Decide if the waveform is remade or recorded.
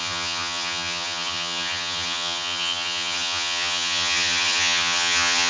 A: remade